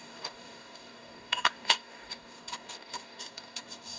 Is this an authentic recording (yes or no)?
no